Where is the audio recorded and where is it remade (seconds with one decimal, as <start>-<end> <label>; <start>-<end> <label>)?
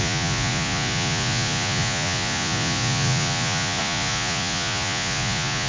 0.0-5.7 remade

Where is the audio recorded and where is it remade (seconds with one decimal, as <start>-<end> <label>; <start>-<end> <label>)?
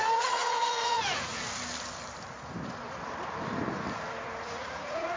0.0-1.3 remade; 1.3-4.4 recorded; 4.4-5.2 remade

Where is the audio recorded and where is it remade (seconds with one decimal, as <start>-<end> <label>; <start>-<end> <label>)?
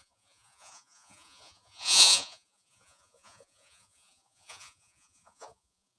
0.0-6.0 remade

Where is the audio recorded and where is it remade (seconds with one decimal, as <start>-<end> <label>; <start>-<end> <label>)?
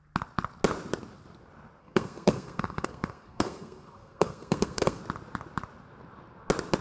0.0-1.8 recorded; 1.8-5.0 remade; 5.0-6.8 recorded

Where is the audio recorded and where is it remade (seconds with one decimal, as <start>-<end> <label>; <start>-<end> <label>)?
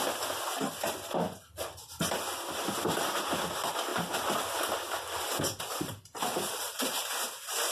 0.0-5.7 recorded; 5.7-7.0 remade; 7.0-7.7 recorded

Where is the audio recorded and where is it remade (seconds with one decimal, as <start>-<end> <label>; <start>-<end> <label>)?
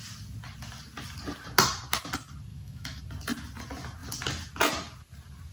0.0-2.5 recorded; 2.5-3.0 remade; 3.0-5.5 recorded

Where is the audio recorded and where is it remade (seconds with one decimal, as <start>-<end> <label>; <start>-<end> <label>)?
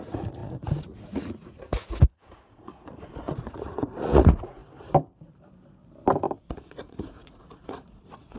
0.0-4.6 remade; 4.6-6.4 recorded; 6.4-8.4 remade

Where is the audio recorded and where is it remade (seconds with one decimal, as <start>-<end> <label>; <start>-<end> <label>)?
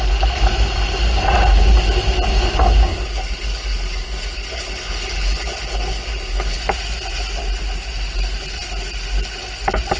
0.0-2.9 recorded; 2.9-6.6 remade; 6.6-10.0 recorded